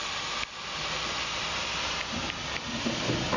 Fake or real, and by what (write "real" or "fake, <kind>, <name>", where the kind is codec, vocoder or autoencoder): real